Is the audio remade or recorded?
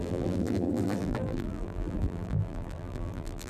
remade